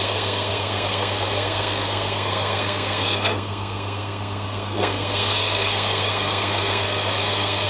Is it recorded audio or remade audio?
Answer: remade